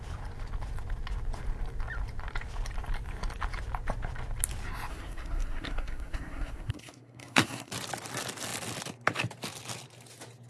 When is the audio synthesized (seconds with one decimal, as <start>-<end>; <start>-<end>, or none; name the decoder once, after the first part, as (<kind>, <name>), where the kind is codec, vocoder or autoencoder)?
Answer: 4.9-7.7 (codec, SNAC)